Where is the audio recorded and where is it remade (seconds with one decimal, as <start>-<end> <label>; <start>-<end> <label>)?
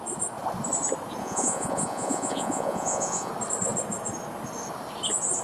0.0-1.2 recorded; 1.2-3.3 remade; 3.3-5.4 recorded